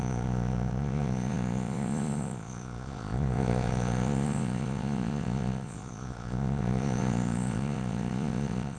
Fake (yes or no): yes